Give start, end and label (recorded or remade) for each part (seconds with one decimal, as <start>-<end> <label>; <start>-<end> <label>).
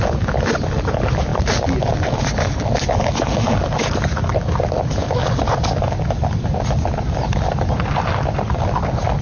0.0-9.2 recorded